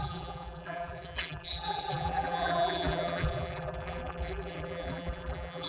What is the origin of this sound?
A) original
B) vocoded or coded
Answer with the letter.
B